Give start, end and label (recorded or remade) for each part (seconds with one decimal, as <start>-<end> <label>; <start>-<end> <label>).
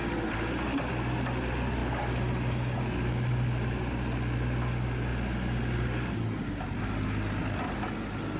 0.0-8.4 recorded